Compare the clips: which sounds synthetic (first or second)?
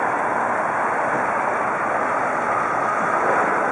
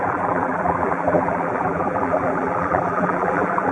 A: second